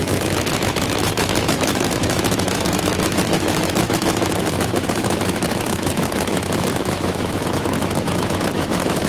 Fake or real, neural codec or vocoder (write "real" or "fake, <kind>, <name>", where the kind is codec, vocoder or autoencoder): fake, autoencoder, DAC-VAE